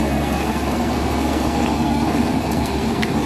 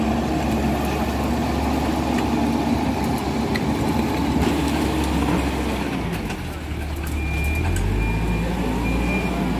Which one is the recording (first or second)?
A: second